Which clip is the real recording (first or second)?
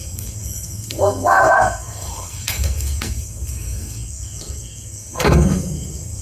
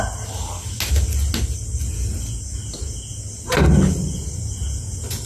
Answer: second